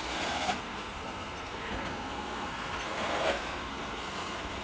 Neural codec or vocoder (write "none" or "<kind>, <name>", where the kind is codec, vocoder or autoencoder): codec, SNAC